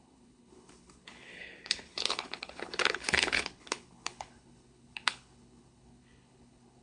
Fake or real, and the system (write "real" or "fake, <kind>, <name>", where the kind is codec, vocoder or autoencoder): fake, codec, HILCodec